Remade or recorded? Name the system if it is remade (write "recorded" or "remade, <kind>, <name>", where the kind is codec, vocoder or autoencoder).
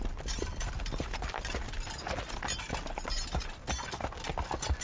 recorded